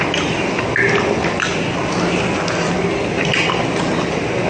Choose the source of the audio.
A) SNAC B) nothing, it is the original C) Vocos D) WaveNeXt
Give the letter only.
B